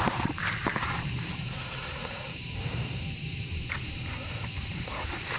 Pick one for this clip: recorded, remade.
remade